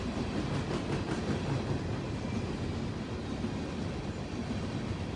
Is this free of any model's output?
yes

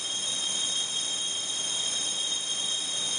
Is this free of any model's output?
yes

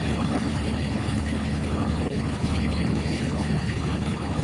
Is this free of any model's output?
no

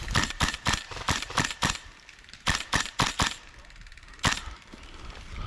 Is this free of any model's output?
no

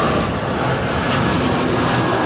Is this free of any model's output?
yes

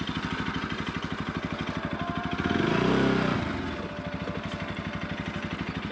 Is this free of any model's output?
yes